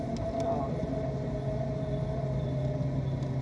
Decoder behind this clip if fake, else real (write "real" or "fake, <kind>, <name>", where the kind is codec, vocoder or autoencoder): real